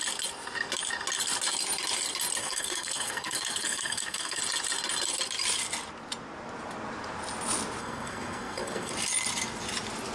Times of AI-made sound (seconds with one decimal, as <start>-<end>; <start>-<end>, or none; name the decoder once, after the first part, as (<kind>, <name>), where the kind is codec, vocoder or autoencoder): 2.4-4.4 (codec, SNAC); 7.8-8.9